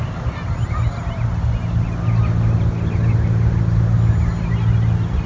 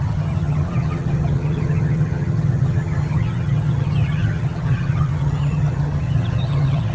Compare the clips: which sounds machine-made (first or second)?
second